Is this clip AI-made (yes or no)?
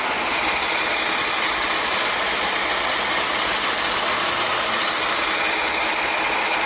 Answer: no